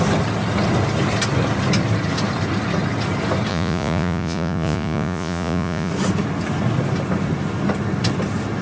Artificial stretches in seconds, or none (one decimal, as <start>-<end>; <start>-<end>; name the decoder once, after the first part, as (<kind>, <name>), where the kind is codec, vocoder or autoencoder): 3.5-5.9 (vocoder, Vocos)